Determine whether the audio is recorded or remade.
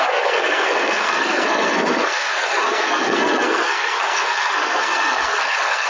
remade